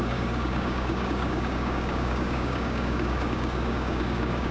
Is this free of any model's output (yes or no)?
no